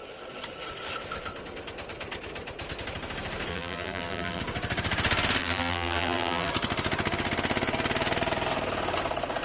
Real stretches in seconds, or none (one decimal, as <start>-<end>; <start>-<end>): 0.0-3.5; 4.4-5.4; 6.5-9.4